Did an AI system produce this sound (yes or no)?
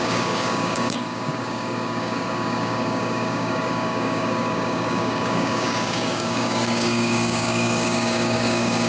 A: yes